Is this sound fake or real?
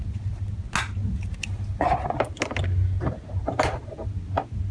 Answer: real